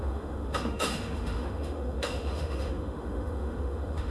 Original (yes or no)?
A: no